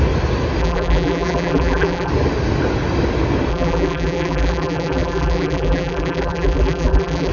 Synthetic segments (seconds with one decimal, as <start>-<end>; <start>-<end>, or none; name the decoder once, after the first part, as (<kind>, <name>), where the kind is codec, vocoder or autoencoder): 0.6-2.1 (vocoder, BigVGAN v2); 3.5-7.3

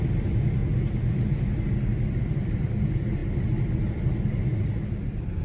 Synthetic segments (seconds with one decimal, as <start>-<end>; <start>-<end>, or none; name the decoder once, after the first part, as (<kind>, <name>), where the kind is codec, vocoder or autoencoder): 4.5-5.4 (vocoder, BigVGAN v2)

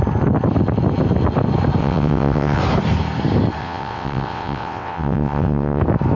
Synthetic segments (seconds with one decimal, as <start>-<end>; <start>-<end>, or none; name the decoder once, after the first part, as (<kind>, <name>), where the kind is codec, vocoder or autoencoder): 1.8-2.6 (vocoder, WaveNeXt); 3.6-5.8

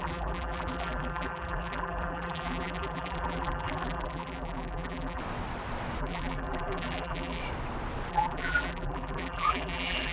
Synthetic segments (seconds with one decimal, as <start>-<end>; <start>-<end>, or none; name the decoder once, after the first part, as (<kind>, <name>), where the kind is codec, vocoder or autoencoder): 0.0-5.2 (vocoder, BigVGAN v2); 6.0-7.4; 8.1-10.1